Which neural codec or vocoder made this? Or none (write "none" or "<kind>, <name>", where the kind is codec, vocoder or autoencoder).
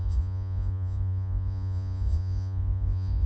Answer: vocoder, Vocos